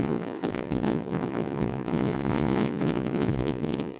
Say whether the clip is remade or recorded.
remade